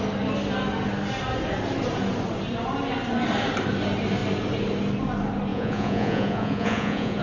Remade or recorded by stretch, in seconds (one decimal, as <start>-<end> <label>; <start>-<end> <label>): 0.0-5.5 recorded; 5.5-7.2 remade